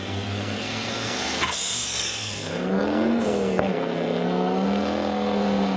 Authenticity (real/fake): fake